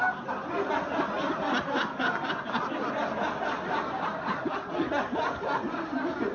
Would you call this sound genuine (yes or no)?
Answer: yes